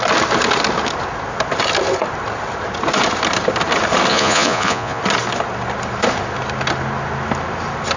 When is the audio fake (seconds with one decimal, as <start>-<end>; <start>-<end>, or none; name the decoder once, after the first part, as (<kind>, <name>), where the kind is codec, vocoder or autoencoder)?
4.1-5.0 (vocoder, Vocos)